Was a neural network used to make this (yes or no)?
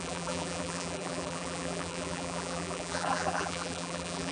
yes